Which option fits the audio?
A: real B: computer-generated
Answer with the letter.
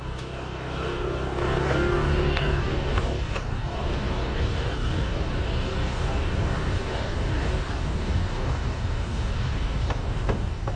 B